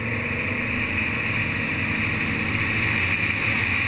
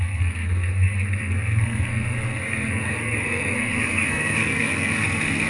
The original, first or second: first